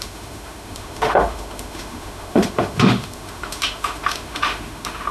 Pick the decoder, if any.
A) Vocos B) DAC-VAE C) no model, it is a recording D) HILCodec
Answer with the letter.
B